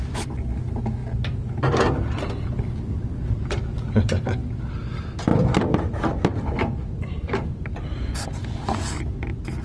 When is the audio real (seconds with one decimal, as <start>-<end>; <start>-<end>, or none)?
0.0-9.6